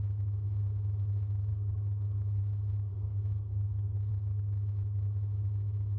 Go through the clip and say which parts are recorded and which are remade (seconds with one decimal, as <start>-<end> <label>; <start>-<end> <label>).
0.0-1.5 recorded; 1.5-2.4 remade; 2.4-2.9 recorded; 2.9-4.1 remade; 4.1-6.0 recorded